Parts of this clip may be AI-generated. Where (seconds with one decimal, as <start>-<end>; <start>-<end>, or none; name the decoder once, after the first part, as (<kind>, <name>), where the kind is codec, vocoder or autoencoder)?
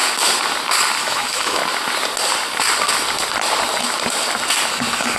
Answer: 1.0-1.6 (autoencoder, DAC-VAE); 4.7-5.2